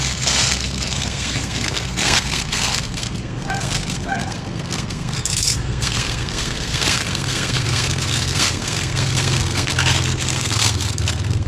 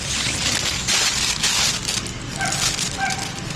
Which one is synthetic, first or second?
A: first